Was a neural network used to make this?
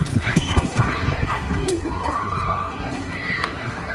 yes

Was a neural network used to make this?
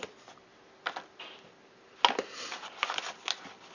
no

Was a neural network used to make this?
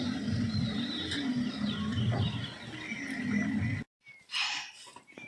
no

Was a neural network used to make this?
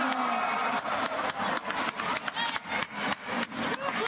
no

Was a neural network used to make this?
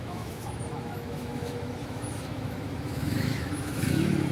yes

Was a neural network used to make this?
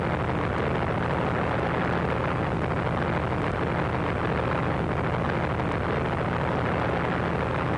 no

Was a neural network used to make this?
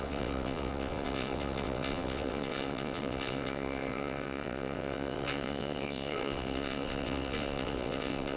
yes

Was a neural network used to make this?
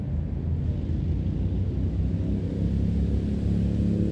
no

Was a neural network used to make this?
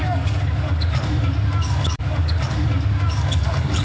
yes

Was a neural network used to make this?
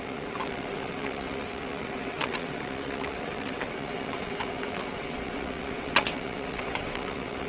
yes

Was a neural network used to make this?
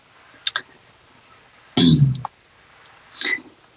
no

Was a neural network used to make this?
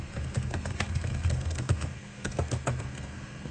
yes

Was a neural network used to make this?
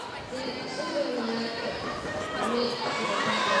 no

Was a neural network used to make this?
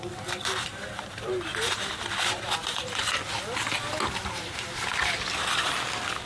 no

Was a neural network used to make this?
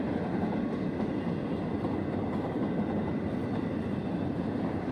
no